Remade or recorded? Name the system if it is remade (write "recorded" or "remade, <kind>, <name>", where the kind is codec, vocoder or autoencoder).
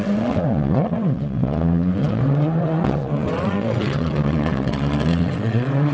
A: remade, vocoder, WaveNeXt